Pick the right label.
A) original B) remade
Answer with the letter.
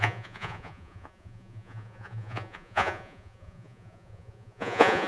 B